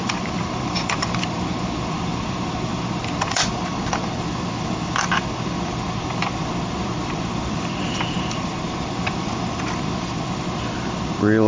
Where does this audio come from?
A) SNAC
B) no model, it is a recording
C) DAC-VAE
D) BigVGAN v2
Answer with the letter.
D